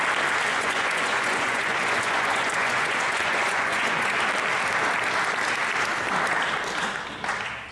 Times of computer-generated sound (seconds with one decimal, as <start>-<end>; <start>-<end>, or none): 0.5-4.2